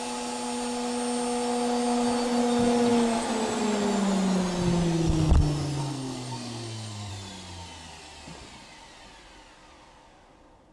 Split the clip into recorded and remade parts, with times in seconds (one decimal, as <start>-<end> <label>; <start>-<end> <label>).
0.0-5.8 recorded; 5.8-7.1 remade; 7.1-10.7 recorded